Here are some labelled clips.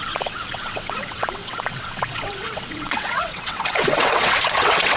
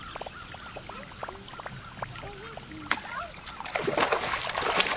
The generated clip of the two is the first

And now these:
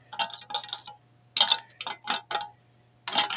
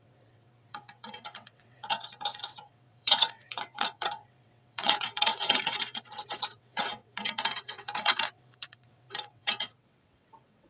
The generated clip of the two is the second